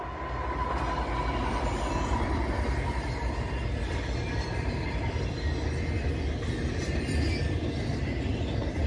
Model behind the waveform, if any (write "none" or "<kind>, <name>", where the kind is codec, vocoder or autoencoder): none